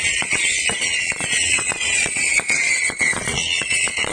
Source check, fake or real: fake